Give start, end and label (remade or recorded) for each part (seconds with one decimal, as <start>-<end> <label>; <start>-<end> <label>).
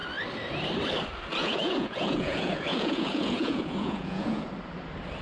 0.0-1.4 recorded; 1.4-4.5 remade; 4.5-5.2 recorded